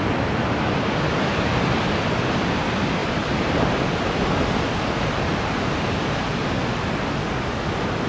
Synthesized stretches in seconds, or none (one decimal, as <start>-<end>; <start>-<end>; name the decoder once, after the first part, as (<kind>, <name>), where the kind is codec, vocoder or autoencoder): none